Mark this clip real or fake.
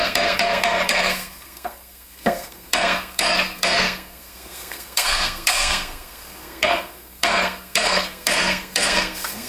fake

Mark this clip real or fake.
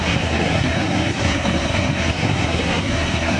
fake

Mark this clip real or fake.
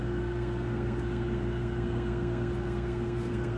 fake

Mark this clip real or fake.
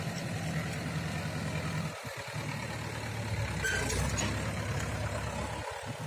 real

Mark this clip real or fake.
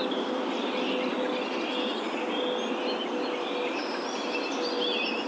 real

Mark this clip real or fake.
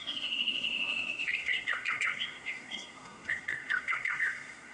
fake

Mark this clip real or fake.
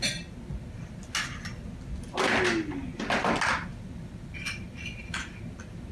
real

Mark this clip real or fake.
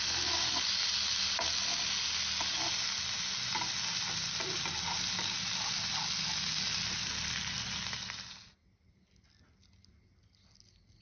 real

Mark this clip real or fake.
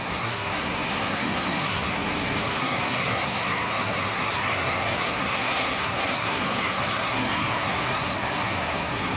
fake